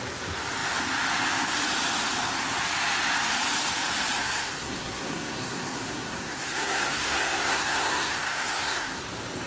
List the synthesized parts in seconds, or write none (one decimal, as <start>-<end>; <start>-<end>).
4.2-9.0